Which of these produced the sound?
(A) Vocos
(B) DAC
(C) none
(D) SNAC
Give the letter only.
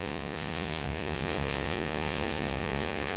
A